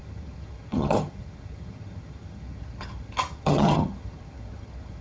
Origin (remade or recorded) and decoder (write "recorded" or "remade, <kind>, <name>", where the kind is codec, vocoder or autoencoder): remade, vocoder, HiFi-GAN